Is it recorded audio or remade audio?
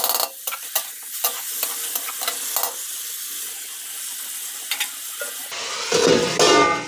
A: recorded